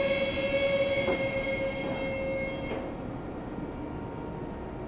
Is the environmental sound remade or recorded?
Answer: recorded